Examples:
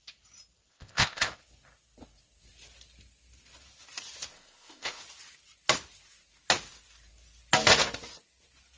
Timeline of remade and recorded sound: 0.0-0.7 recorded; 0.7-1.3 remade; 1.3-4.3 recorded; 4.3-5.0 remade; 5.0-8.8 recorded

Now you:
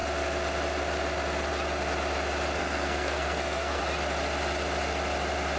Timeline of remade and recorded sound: 0.0-2.6 recorded; 2.6-3.8 remade; 3.8-5.6 recorded

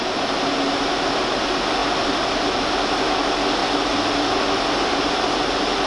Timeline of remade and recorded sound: 0.0-5.9 recorded

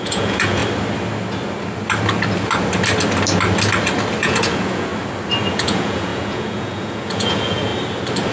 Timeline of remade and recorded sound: 0.0-0.6 remade; 0.6-4.2 recorded; 4.2-4.9 remade; 4.9-5.5 recorded; 5.5-7.7 remade; 7.7-8.3 recorded

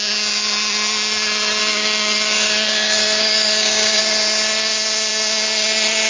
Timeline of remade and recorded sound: 0.0-1.6 recorded; 1.6-4.0 remade; 4.0-6.1 recorded

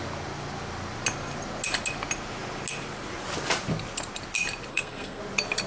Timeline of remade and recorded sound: 0.0-4.7 recorded; 4.7-5.2 remade; 5.2-5.7 recorded

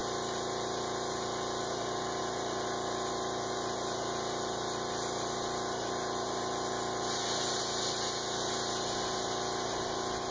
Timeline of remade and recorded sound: 0.0-10.3 recorded

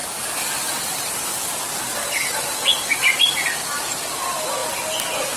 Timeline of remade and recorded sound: 0.0-5.4 recorded